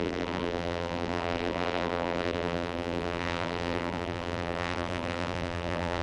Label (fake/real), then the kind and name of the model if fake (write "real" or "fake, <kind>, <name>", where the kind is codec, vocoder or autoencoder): fake, vocoder, BigVGAN v2